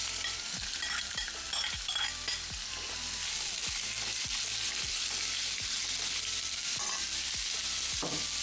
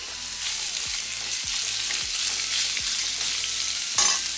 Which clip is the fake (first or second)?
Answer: first